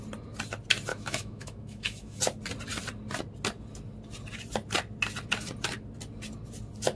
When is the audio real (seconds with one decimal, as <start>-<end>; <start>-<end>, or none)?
0.0-0.9; 2.2-6.9